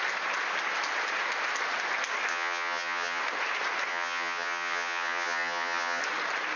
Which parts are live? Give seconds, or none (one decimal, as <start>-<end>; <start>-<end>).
0.0-2.3; 3.2-3.9; 6.0-6.6